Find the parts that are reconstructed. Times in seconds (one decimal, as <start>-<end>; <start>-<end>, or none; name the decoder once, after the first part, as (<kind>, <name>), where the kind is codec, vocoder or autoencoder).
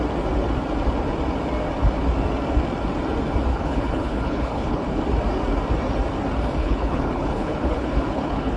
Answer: 3.5-5.0 (codec, HILCodec); 6.6-8.6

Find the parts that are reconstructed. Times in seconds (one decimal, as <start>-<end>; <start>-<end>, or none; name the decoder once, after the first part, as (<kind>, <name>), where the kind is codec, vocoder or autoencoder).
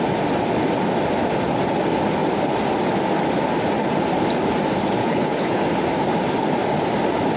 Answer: 5.0-5.6 (codec, HILCodec)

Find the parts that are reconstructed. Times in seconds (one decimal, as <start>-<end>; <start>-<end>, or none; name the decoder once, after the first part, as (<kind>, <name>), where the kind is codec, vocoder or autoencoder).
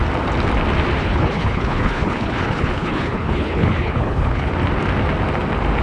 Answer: 1.0-4.5 (codec, HILCodec)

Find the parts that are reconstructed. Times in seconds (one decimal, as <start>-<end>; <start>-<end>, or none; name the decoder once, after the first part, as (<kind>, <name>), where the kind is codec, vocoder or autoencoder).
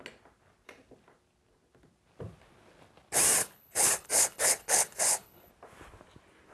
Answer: 3.4-5.5 (codec, HILCodec)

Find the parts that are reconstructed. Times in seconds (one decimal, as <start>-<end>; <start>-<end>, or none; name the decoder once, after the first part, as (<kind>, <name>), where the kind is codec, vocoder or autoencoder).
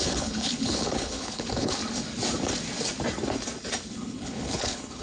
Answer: 0.0-1.8 (codec, HILCodec); 3.9-5.0